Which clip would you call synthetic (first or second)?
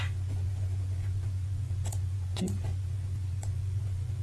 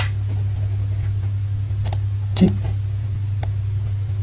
first